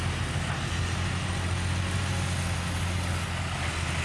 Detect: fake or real real